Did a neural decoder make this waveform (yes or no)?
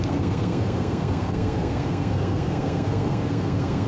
yes